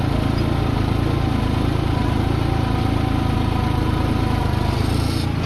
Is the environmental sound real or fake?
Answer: real